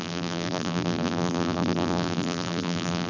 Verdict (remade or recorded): remade